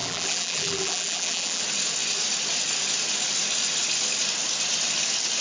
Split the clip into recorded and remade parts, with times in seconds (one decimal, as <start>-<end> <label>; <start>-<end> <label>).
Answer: 0.0-1.6 remade; 1.6-5.4 recorded